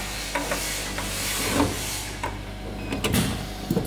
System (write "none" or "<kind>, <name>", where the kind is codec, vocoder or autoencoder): none